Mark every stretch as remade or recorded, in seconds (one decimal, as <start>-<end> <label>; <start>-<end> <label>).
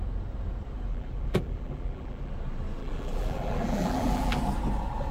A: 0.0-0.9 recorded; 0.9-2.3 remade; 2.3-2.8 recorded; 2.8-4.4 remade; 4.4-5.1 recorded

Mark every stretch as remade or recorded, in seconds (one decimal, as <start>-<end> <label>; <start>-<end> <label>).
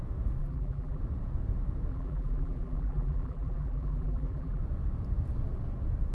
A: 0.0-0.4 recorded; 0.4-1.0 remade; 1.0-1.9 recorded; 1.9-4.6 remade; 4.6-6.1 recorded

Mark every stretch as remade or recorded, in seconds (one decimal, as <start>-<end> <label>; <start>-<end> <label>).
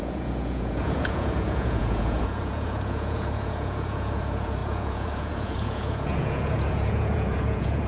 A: 0.0-7.9 remade